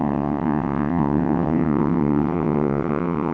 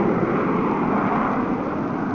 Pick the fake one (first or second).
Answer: first